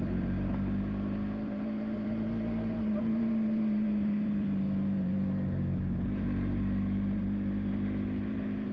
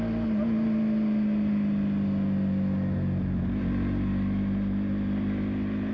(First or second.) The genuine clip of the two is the second